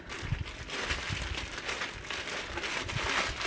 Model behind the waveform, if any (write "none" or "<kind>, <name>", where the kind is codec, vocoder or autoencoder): none